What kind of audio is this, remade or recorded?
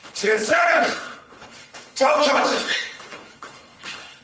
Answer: remade